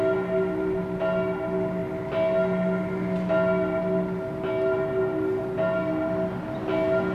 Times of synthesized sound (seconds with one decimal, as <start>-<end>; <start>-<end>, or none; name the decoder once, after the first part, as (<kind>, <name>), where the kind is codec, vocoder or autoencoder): none